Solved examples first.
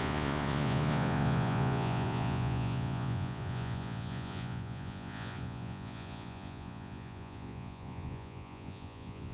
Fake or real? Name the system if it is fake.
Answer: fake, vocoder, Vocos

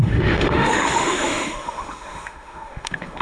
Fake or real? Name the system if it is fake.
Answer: fake, autoencoder, DAC-VAE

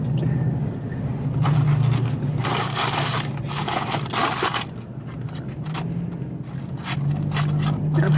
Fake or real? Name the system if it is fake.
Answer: real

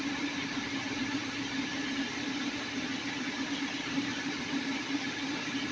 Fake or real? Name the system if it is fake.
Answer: real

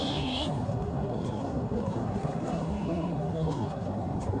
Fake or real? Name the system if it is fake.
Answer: fake, codec, SNAC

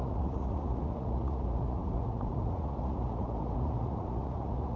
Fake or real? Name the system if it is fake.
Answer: fake, vocoder, Vocos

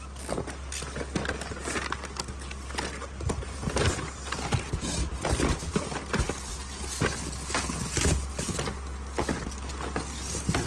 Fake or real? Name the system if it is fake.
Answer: real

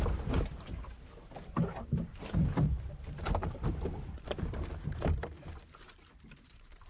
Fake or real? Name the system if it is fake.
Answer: fake, vocoder, BigVGAN v2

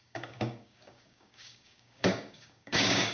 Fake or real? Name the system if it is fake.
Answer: fake, codec, DAC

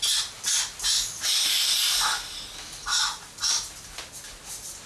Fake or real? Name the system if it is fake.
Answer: real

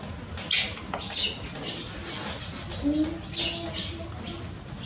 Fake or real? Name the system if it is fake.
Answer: real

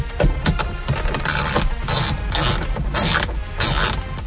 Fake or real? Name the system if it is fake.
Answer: real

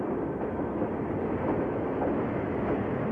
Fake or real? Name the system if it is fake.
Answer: real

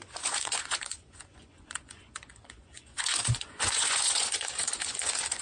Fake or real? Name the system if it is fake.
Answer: fake, vocoder, Vocos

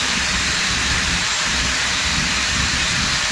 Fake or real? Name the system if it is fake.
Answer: fake, vocoder, BigVGAN v2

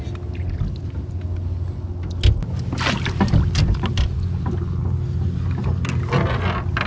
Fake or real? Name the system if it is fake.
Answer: real